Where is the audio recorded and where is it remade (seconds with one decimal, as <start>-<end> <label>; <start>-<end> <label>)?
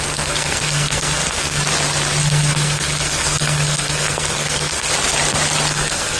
0.0-1.6 remade; 1.6-2.2 recorded; 2.2-4.9 remade; 4.9-5.7 recorded; 5.7-6.2 remade